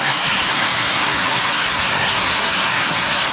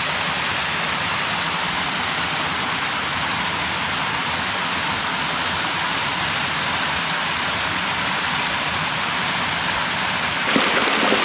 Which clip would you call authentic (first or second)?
second